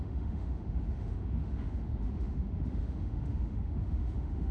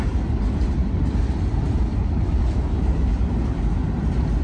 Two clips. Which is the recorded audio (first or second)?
second